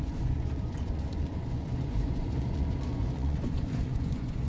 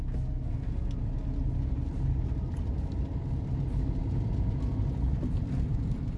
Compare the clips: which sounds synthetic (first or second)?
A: first